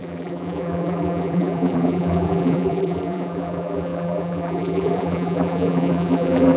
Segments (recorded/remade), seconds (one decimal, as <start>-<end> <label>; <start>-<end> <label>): 0.0-6.6 remade